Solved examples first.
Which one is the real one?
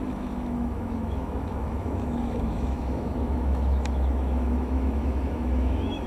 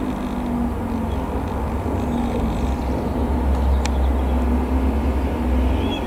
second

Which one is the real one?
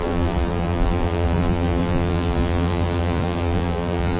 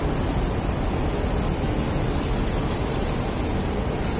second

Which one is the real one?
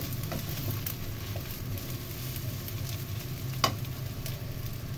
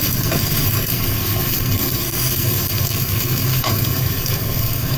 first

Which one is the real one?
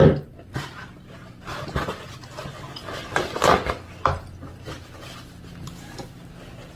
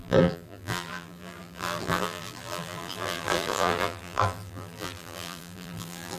first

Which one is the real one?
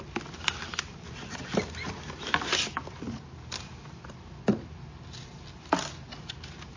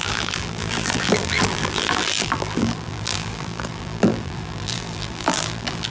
first